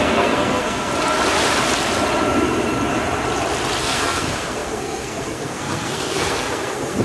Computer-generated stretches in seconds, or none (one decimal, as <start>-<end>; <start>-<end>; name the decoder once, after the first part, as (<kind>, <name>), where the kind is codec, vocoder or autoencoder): 0.0-0.9 (codec, SNAC); 3.8-7.0